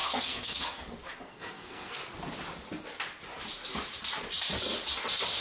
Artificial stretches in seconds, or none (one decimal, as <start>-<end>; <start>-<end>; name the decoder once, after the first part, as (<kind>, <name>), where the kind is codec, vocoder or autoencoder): 0.0-2.0 (codec, SNAC)